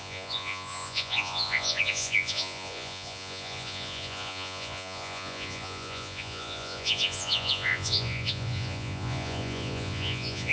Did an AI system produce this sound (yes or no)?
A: yes